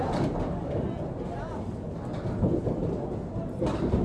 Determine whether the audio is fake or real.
real